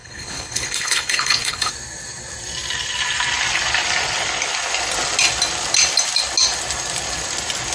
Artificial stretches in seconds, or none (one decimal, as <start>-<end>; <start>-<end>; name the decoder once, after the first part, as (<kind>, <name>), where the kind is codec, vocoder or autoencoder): 0.0-1.7 (codec, HILCodec)